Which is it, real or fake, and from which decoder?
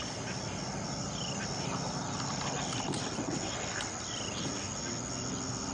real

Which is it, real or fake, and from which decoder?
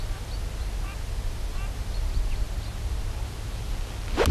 real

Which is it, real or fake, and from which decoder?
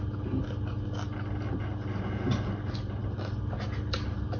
real